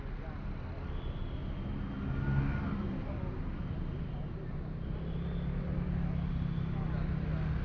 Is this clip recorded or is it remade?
recorded